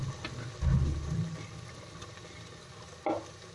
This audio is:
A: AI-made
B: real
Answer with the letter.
B